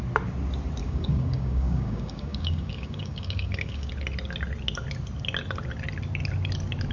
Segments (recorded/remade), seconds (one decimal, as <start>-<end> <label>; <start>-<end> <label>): 0.0-0.8 recorded; 0.8-3.9 remade; 3.9-6.9 recorded